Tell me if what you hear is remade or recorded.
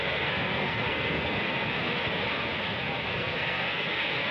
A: remade